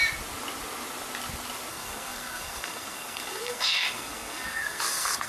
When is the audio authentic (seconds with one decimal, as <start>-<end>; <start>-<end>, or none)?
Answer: 0.0-1.7